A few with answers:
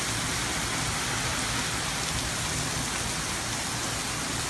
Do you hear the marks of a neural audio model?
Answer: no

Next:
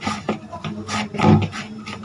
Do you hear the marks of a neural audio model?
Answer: no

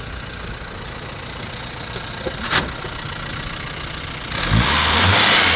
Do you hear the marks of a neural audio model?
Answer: no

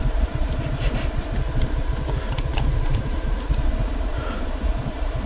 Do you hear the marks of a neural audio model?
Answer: yes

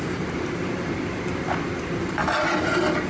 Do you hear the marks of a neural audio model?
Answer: no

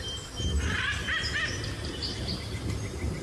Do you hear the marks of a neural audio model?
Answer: no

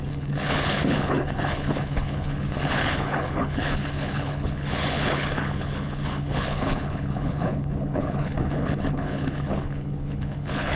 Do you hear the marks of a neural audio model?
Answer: yes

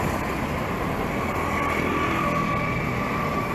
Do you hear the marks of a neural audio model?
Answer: no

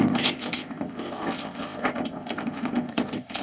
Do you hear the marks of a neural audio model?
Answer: yes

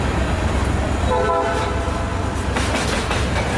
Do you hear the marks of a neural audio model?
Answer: no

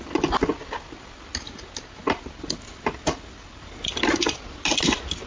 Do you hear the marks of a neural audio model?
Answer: no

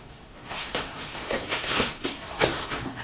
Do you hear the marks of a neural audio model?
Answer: yes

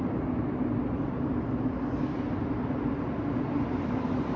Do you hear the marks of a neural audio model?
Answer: no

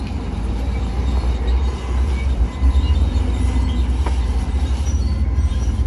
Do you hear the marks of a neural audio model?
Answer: yes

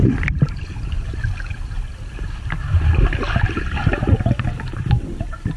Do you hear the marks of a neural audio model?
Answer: no